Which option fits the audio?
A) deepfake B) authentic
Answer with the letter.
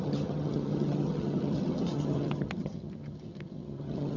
A